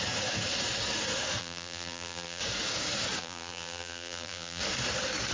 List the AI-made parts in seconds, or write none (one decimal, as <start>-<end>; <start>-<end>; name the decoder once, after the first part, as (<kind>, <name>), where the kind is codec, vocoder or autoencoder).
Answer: 1.4-2.4 (vocoder, BigVGAN v2); 3.2-4.6